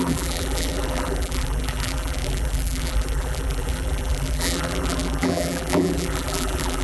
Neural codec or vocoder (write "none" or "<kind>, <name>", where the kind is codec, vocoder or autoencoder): vocoder, BigVGAN v2